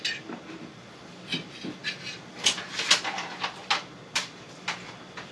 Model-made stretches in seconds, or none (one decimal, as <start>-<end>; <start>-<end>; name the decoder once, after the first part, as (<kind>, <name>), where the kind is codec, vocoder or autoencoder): none